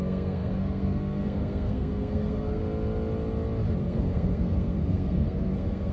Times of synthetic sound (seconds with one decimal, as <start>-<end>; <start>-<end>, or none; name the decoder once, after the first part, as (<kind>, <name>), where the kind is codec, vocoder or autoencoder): 0.0-2.6 (codec, SNAC); 3.8-5.9